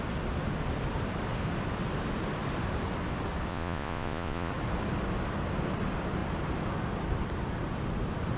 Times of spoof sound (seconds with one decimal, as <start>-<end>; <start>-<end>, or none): 3.5-4.5